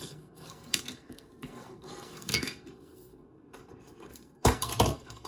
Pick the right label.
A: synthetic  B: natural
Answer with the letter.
A